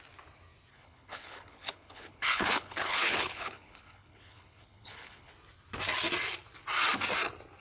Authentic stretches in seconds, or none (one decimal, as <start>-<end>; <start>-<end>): 0.0-0.7; 5.3-7.6